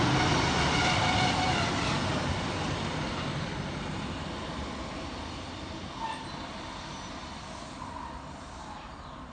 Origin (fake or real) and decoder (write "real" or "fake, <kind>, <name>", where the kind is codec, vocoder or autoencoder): real